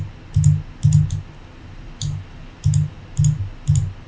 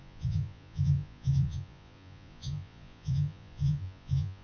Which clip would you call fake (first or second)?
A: second